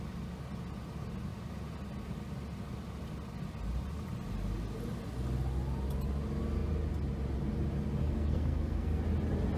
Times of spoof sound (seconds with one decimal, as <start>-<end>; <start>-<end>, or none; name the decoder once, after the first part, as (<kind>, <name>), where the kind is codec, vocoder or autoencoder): 8.0-9.0 (codec, SNAC)